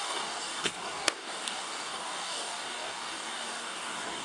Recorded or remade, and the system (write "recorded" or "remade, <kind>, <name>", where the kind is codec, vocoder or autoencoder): remade, codec, DAC